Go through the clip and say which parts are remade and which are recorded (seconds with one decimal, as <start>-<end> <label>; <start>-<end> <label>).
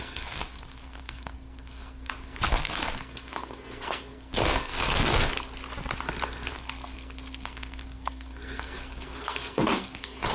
0.0-5.3 remade; 5.3-6.5 recorded; 6.5-10.3 remade